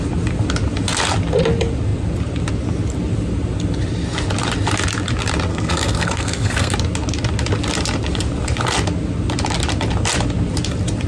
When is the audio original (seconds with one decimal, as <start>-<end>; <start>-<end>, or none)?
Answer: 0.0-5.5; 6.7-11.1